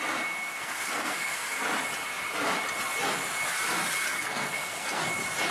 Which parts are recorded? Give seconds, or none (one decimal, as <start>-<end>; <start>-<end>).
0.0-0.4; 1.6-4.1; 5.0-5.5